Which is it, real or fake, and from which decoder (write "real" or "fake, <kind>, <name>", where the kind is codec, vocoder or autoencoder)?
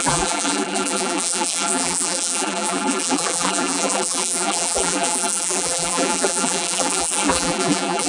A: fake, vocoder, BigVGAN v2